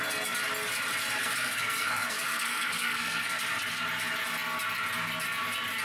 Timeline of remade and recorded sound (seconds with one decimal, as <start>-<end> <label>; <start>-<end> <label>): 0.0-1.2 recorded; 1.2-3.4 remade; 3.4-5.8 recorded